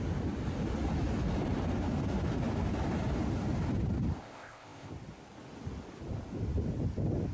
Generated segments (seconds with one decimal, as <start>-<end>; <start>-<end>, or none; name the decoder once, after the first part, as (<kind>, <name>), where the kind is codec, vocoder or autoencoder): 4.2-4.9 (codec, ZipCodec)

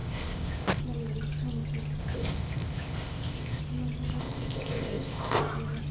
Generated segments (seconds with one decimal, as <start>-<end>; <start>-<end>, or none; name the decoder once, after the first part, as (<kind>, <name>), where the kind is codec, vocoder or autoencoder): 0.0-0.8 (codec, ZipCodec); 2.0-3.6; 4.2-5.4

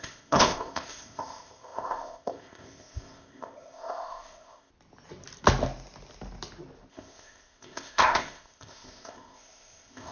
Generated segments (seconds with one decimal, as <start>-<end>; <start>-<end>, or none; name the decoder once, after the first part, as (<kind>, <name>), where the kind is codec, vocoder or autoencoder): 0.0-4.7 (codec, ZipCodec); 6.9-10.1